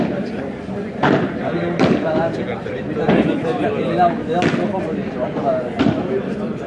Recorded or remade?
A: remade